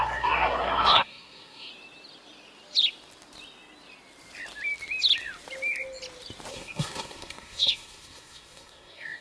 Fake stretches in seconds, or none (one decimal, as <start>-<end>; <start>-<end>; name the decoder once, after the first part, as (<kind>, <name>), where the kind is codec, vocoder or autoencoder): 0.0-1.7 (codec, SNAC); 6.5-9.2